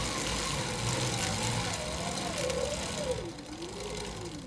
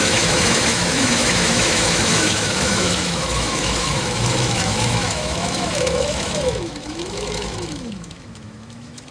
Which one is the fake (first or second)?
second